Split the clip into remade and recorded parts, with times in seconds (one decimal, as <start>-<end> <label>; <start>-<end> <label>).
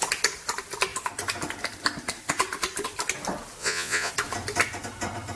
0.0-3.6 recorded; 3.6-4.1 remade; 4.1-5.4 recorded